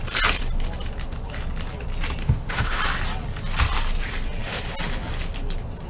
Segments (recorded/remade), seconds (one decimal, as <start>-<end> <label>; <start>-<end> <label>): 0.0-2.2 recorded; 2.2-2.8 remade; 2.8-5.9 recorded